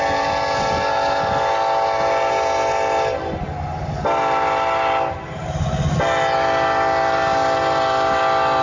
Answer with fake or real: real